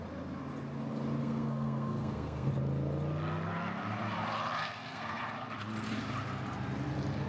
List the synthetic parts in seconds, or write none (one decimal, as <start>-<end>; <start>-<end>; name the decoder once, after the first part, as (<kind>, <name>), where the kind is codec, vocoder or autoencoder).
1.2-2.5 (codec, SNAC); 4.6-5.2